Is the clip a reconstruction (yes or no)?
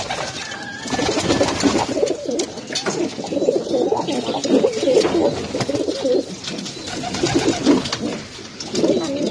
no